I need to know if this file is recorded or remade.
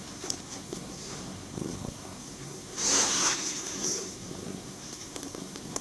remade